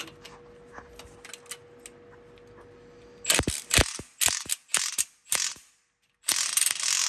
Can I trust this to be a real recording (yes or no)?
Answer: yes